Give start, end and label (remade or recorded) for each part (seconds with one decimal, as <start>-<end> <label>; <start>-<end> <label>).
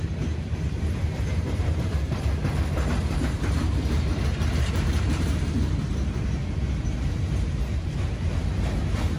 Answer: 0.0-6.4 remade; 6.4-7.0 recorded; 7.0-9.2 remade